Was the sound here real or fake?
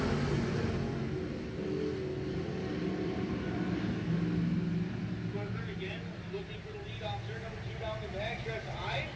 real